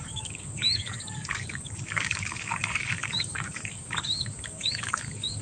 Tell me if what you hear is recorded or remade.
remade